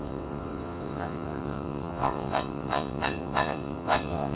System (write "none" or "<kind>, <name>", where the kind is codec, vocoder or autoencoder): vocoder, WaveNeXt